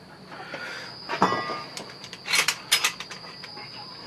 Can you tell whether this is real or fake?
real